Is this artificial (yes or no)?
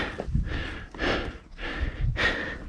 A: no